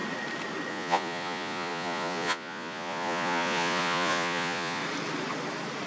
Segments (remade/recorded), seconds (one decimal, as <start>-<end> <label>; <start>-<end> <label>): 0.0-0.7 recorded; 0.7-4.8 remade; 4.8-5.9 recorded